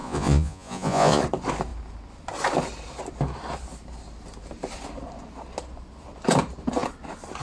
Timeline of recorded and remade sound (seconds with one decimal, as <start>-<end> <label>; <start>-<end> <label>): 0.0-1.2 remade; 1.2-7.4 recorded

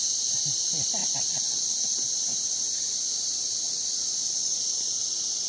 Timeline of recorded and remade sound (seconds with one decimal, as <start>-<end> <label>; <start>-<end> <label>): 0.0-5.5 recorded

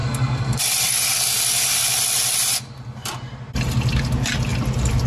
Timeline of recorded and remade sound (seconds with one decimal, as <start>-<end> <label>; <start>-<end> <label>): 0.0-0.6 remade; 0.6-5.1 recorded

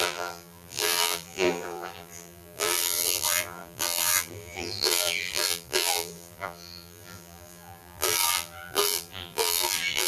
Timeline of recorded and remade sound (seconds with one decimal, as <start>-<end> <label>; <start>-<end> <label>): 0.0-10.1 remade

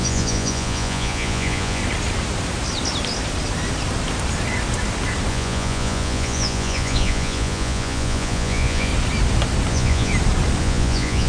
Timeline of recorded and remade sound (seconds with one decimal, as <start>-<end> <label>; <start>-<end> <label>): 0.0-1.8 remade; 1.8-5.3 recorded; 5.3-8.9 remade; 8.9-9.7 recorded; 9.7-10.1 remade; 10.1-10.6 recorded; 10.6-11.3 remade

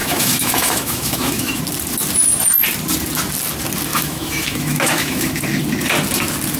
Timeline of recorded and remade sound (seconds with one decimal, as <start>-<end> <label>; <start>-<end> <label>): 0.0-1.6 remade; 1.6-3.9 recorded; 3.9-5.4 remade; 5.4-6.6 recorded